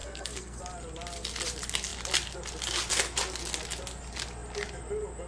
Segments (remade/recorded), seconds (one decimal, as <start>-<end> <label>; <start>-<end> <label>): 0.0-0.6 remade; 0.6-5.3 recorded